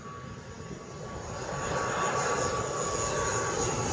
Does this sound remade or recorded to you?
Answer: recorded